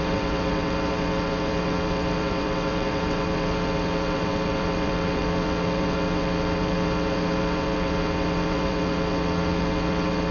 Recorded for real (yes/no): no